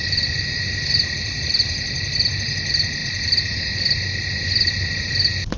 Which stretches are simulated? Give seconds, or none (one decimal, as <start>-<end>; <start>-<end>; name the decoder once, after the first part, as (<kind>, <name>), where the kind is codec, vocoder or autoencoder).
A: none